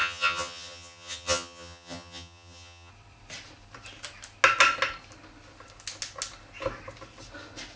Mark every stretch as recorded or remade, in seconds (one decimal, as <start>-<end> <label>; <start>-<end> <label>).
0.0-2.9 remade; 2.9-7.8 recorded